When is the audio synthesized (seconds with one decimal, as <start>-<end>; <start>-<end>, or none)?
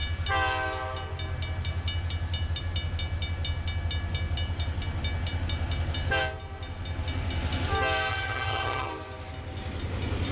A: 8.1-8.9